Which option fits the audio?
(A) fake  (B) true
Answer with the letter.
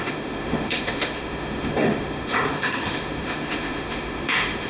A